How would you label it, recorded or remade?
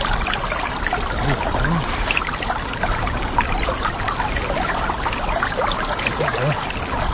recorded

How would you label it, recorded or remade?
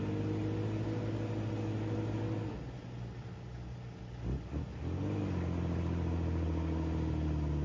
recorded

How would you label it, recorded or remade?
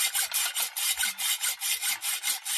recorded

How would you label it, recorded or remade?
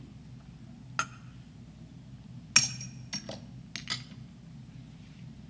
recorded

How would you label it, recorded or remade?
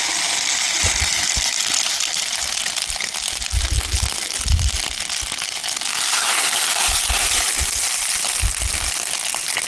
recorded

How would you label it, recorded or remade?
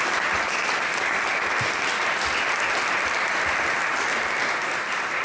recorded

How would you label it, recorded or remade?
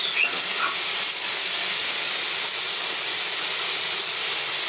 recorded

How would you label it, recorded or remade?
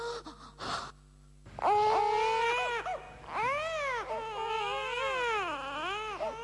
recorded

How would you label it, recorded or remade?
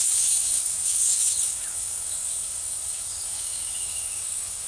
remade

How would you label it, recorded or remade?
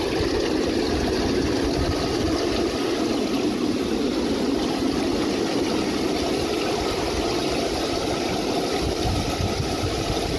recorded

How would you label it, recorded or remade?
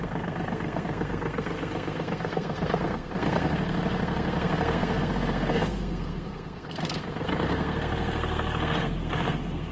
remade